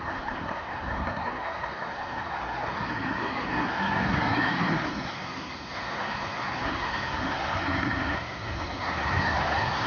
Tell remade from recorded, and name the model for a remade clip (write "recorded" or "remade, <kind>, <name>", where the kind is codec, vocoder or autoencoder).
remade, codec, SNAC